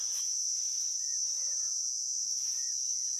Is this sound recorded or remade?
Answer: remade